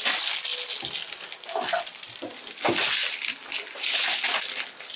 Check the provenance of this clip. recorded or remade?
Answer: recorded